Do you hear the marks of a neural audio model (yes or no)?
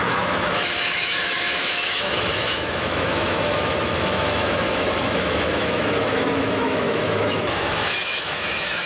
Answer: yes